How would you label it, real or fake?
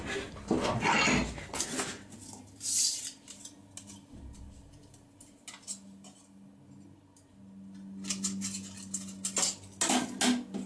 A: real